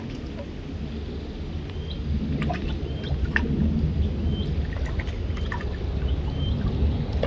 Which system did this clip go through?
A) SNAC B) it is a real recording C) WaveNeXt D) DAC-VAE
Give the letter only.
B